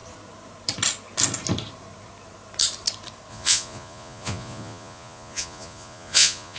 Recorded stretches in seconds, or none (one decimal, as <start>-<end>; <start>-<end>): 0.0-3.3